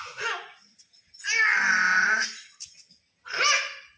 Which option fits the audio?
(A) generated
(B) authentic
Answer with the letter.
B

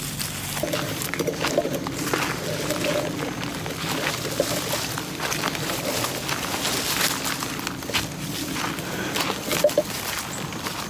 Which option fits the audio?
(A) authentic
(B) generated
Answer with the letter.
A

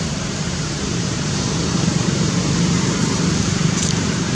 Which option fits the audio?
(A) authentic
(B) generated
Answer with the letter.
B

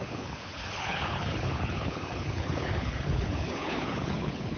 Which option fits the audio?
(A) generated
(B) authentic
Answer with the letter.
A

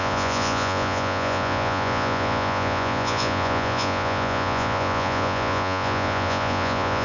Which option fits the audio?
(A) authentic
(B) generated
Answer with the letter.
B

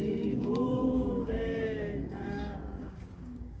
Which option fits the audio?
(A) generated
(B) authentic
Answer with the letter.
A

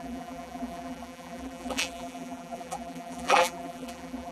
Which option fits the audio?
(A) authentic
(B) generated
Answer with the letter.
B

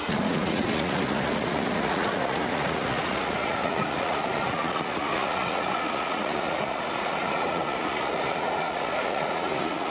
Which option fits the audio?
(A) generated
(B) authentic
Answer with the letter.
A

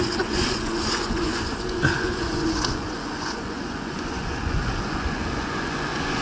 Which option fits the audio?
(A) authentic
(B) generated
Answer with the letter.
B